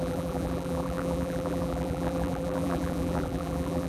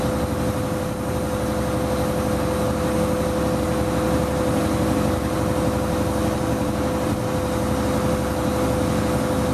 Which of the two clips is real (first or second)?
second